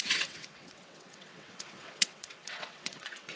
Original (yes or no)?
no